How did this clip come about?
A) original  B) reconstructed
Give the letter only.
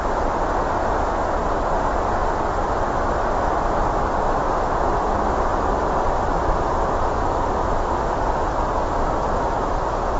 B